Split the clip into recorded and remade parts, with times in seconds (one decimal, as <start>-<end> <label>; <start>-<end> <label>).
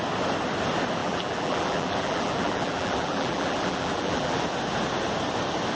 0.0-1.0 recorded; 1.0-4.4 remade; 4.4-5.7 recorded